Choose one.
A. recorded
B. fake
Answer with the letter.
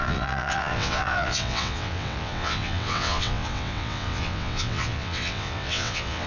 B